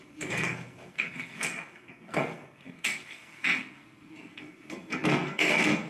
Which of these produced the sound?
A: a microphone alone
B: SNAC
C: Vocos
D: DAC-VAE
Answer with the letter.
B